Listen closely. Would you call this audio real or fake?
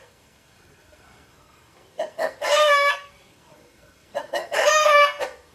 fake